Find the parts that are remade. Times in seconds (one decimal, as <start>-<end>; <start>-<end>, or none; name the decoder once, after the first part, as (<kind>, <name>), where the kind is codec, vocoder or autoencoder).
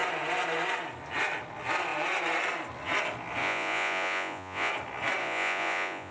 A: 3.4-4.7 (vocoder, Vocos); 5.2-6.1